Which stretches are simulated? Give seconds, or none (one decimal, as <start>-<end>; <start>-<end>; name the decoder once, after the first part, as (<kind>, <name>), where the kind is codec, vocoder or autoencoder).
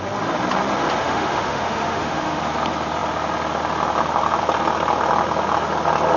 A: 1.0-2.4 (autoencoder, DAC-VAE)